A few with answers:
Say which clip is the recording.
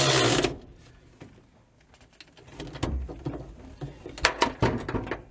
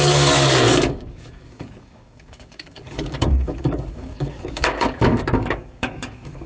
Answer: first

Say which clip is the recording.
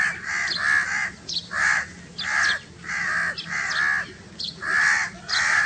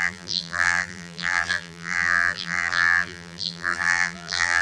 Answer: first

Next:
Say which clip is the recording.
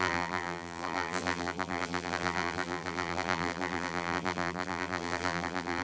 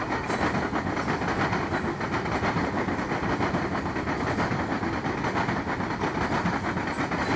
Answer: second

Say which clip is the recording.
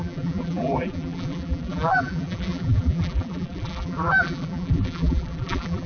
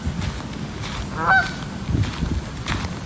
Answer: second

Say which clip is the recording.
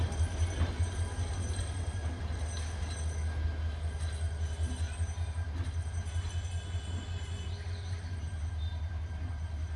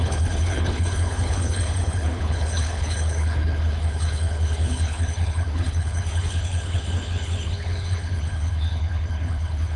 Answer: first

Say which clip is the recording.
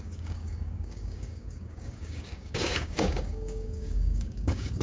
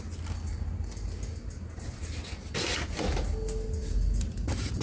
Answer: second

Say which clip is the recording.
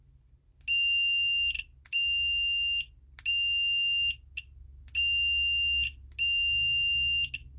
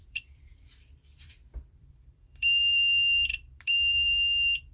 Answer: first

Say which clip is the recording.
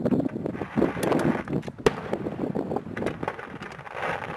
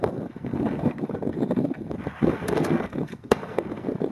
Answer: first